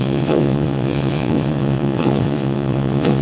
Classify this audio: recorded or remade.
remade